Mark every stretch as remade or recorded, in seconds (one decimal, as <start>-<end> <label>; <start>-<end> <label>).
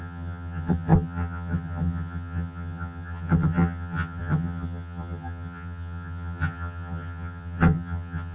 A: 0.0-8.3 remade